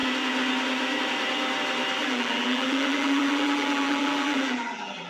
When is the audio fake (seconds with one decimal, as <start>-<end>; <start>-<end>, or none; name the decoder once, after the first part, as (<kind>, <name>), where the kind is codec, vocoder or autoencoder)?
2.0-5.1 (vocoder, BigVGAN v2)